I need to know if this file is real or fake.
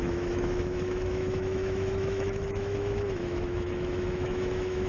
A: fake